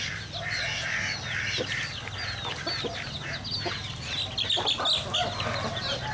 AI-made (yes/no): no